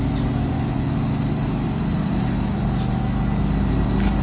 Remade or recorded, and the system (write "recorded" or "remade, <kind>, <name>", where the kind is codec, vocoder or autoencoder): recorded